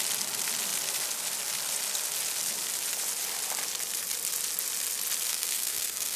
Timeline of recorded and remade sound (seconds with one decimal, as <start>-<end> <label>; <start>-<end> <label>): 0.0-5.3 recorded; 5.3-6.2 remade